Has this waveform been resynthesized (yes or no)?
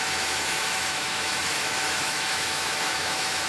yes